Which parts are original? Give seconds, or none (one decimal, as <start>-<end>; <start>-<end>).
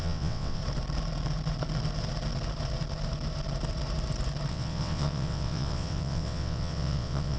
0.6-4.5